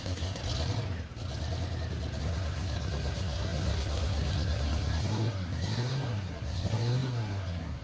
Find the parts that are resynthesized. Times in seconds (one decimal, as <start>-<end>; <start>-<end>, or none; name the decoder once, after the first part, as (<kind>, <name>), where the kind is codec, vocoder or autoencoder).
0.0-0.4 (codec, SNAC); 2.2-7.8

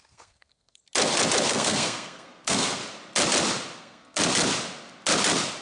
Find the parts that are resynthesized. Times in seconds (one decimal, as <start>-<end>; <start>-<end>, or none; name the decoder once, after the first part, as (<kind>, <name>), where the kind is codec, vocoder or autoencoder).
0.0-0.8 (codec, SNAC); 1.5-2.8; 3.8-4.2

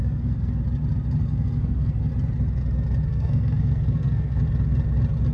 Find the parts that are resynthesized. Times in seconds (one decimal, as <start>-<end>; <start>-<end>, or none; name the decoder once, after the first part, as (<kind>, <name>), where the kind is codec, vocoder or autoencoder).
0.0-0.6 (codec, SNAC); 1.2-2.1; 3.1-4.4

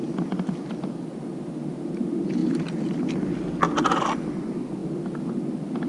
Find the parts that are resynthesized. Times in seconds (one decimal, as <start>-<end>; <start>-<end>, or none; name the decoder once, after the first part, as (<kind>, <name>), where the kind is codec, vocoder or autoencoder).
none

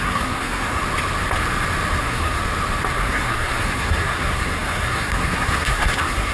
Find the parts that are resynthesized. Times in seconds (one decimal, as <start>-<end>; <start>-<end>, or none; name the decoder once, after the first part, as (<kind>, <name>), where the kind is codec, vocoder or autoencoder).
0.0-0.8 (codec, SNAC); 2.0-2.4; 3.0-6.3

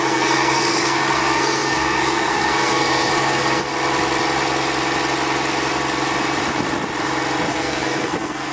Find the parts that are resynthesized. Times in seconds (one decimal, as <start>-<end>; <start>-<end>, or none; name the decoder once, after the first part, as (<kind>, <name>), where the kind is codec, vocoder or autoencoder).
0.0-3.7 (codec, SNAC); 7.5-8.5